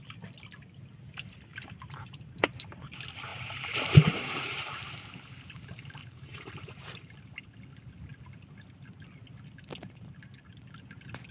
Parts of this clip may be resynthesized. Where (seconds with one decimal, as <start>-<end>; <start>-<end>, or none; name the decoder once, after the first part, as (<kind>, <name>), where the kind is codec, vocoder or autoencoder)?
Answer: 1.5-2.8 (vocoder, BigVGAN v2); 3.3-5.0; 6.0-7.2